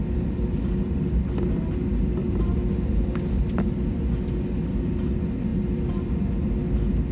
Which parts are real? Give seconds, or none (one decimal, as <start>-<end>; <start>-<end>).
0.0-7.1